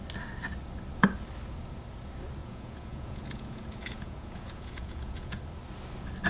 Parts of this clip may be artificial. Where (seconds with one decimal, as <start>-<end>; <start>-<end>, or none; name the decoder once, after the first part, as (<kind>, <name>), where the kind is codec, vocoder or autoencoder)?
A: 2.4-5.4 (vocoder, Vocos)